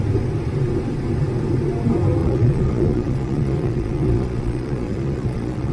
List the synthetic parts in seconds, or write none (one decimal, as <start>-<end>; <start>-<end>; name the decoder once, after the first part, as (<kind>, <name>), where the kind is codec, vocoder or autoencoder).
2.2-5.7 (vocoder, Vocos)